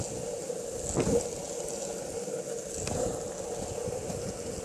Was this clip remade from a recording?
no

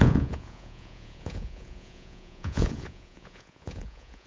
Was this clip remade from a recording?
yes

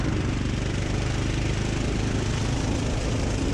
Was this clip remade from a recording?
no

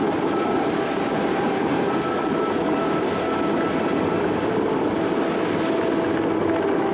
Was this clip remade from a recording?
no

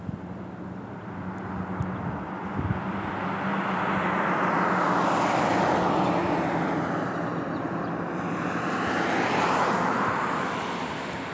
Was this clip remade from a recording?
no